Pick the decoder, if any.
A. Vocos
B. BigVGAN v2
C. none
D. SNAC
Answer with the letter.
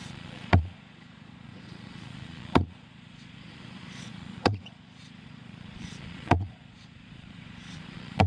A